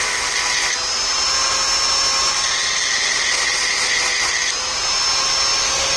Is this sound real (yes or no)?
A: yes